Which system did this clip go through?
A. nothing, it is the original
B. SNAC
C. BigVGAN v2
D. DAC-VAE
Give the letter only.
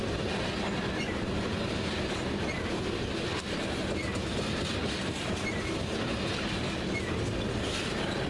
A